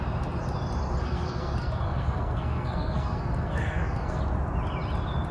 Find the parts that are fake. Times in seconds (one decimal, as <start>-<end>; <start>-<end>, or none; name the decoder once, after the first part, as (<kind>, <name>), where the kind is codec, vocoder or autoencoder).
1.0-4.2 (codec, SNAC)